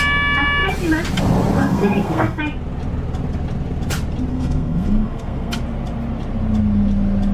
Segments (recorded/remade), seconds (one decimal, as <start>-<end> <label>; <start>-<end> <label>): 0.0-1.6 recorded; 1.6-2.4 remade; 2.4-4.3 recorded; 4.3-5.6 remade; 5.6-7.3 recorded